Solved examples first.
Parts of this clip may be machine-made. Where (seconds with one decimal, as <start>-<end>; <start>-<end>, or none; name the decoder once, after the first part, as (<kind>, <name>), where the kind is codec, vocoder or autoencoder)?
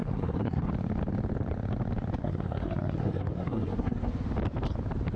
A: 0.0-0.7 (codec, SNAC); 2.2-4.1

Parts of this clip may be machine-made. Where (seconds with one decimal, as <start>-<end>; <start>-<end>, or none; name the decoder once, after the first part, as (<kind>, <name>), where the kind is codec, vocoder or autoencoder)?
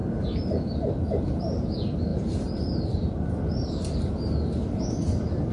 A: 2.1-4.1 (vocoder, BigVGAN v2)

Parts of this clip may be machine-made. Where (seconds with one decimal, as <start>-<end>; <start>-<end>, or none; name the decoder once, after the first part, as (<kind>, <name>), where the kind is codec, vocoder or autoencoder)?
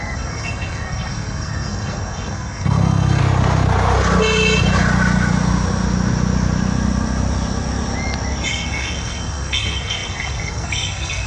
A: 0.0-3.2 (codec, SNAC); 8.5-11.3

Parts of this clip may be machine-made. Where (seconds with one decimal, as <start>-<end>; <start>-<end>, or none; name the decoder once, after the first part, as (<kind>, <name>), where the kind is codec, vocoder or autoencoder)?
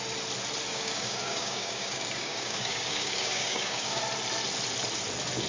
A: 0.7-4.0 (codec, DAC)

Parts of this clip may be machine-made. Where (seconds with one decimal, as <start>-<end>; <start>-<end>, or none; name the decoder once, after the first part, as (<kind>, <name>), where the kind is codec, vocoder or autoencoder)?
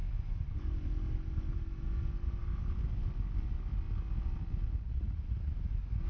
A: 4.9-5.5 (vocoder, Vocos)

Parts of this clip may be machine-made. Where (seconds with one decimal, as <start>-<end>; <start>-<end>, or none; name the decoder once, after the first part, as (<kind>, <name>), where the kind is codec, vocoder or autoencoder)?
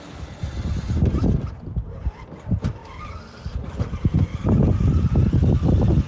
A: none